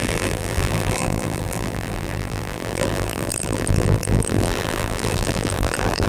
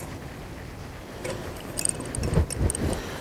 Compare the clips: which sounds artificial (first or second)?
first